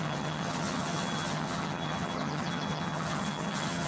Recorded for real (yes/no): no